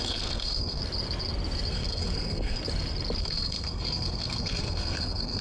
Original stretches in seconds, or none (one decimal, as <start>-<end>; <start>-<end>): 0.8-1.7; 2.6-3.2